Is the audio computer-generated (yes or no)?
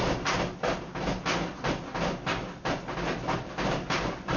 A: no